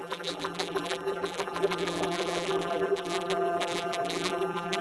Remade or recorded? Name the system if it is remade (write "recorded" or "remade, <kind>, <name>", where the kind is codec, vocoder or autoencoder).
remade, vocoder, BigVGAN v2